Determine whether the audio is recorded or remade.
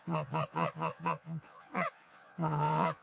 remade